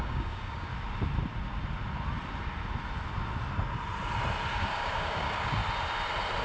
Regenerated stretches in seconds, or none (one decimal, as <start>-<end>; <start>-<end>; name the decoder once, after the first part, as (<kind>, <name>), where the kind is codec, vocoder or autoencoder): 0.0-0.7 (codec, DAC); 4.5-5.6